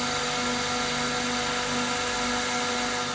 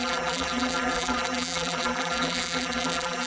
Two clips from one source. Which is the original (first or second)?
first